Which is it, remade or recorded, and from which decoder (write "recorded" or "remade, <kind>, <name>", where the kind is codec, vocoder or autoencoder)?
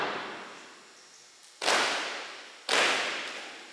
recorded